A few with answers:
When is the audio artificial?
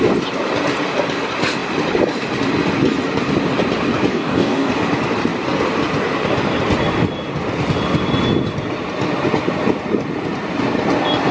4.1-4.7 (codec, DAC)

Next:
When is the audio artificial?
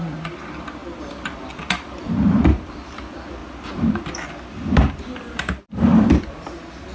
0.8-2.4 (vocoder, BigVGAN v2); 3.4-6.3